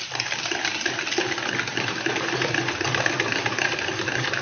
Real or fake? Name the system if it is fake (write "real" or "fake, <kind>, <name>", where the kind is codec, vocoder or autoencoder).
fake, vocoder, BigVGAN v2